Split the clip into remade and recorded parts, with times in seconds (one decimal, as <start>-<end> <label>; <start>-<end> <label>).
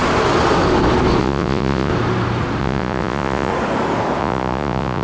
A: 0.0-1.2 recorded; 1.2-1.9 remade; 1.9-2.6 recorded; 2.6-3.5 remade; 3.5-4.2 recorded; 4.2-5.0 remade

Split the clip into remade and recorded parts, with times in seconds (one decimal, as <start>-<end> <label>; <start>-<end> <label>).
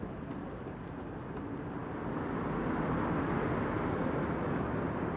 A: 0.0-5.2 recorded